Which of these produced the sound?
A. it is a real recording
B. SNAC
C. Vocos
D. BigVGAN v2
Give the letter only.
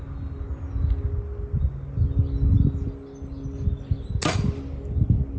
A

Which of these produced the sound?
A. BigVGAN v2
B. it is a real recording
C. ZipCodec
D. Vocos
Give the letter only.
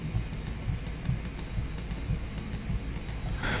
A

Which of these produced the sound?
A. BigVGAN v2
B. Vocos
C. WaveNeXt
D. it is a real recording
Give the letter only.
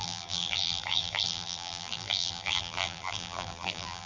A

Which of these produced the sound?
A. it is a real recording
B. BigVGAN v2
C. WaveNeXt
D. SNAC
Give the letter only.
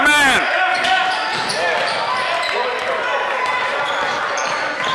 A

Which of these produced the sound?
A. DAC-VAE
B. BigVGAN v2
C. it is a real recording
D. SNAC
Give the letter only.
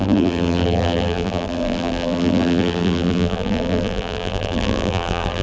B